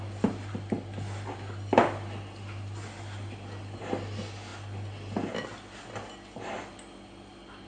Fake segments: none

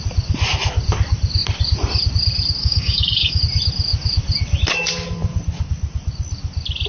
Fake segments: 2.6-3.4 (codec, DAC)

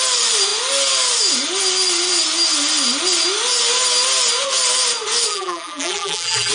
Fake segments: 5.3-6.5 (vocoder, BigVGAN v2)

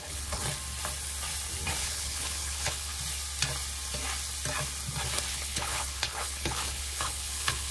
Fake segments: 0.0-0.4 (codec, HILCodec); 1.8-2.9; 5.3-7.7

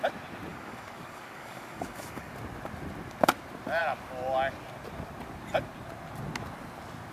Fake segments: 0.5-2.3 (codec, DAC)

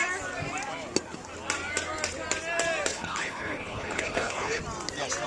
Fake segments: 2.9-4.6 (codec, HILCodec)